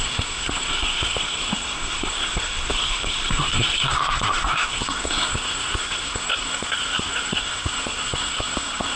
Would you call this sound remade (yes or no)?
yes